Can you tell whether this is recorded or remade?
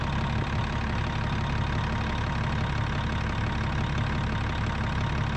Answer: recorded